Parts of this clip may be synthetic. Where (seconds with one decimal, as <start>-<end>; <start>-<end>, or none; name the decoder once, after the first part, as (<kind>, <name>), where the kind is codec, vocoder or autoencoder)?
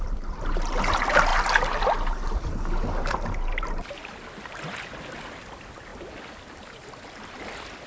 none